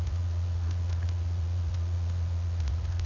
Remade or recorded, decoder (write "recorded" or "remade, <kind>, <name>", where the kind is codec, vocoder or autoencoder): remade, vocoder, Vocos